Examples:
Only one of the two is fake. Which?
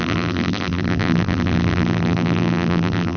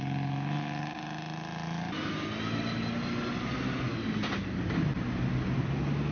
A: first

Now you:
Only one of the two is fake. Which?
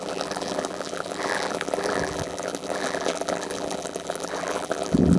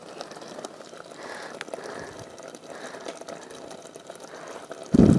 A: first